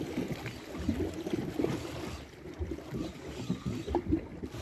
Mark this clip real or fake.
real